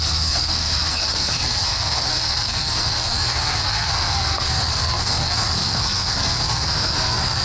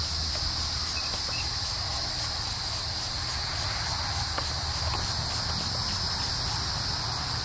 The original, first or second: second